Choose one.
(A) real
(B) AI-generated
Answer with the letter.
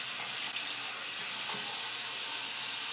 A